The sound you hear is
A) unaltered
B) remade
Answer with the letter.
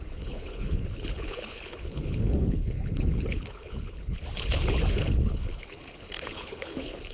B